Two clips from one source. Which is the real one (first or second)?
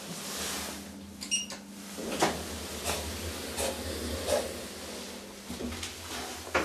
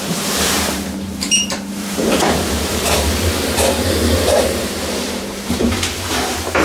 first